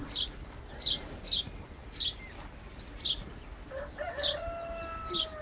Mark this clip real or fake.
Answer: real